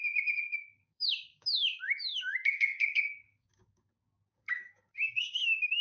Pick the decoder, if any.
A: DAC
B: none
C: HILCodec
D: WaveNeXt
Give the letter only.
A